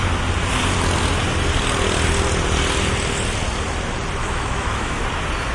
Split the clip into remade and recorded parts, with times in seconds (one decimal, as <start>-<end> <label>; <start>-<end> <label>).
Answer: 0.0-4.2 recorded; 4.2-5.0 remade; 5.0-5.5 recorded